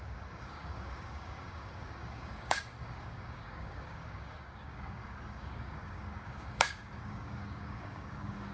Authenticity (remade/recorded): remade